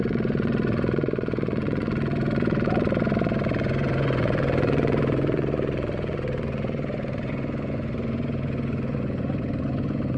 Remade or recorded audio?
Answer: remade